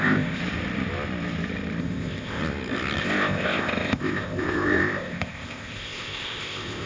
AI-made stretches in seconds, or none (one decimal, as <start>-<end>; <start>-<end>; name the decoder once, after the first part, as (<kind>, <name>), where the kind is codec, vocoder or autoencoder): 0.0-0.4 (codec, ZipCodec); 1.8-2.4; 3.0-6.9